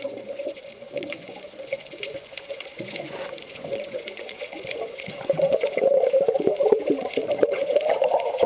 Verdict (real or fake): fake